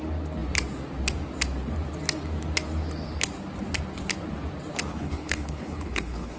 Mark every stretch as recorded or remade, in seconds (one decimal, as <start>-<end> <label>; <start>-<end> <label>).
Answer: 0.0-4.9 recorded; 4.9-6.4 remade